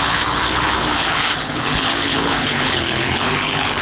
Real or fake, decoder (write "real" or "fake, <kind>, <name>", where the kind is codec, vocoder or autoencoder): fake, codec, HILCodec